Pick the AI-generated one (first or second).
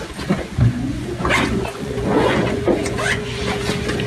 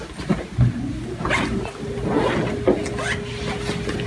first